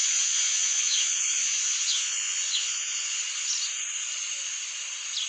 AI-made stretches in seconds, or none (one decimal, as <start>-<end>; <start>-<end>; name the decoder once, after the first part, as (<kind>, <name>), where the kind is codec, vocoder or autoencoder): 0.0-3.2 (vocoder, Vocos)